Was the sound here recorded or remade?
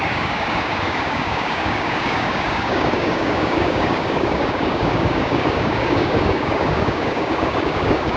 remade